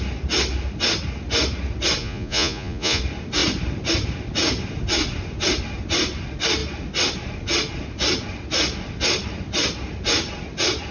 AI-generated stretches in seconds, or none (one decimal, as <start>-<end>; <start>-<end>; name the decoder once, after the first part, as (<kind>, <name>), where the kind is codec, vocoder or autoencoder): 2.0-3.0 (vocoder, Vocos)

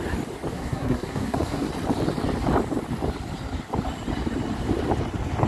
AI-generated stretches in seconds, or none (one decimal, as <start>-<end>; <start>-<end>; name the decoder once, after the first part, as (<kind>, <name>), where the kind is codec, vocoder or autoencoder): 0.5-1.7 (codec, SNAC)

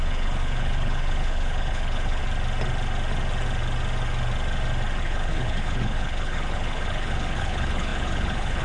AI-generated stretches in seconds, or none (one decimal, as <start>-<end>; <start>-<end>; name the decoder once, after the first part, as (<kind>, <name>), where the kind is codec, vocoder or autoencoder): 0.0-2.2 (codec, HILCodec); 5.0-8.6

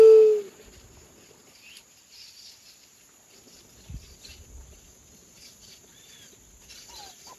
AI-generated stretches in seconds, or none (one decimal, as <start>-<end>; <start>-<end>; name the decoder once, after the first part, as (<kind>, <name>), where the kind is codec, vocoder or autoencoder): none

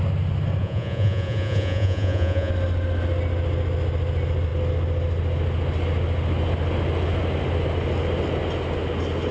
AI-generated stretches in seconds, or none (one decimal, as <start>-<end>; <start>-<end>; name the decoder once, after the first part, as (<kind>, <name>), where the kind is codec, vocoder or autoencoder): 0.6-2.5 (vocoder, Vocos)